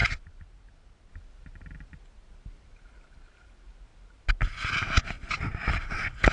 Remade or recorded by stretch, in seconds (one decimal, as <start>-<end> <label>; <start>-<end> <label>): 0.0-6.3 recorded